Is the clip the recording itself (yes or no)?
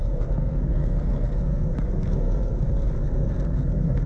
no